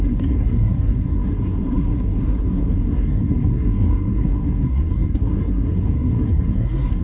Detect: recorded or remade remade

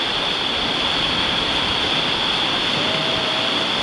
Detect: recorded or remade recorded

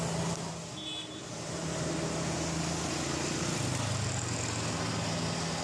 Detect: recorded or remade recorded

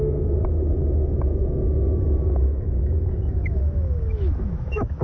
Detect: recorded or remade remade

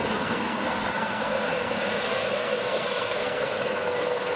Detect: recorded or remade remade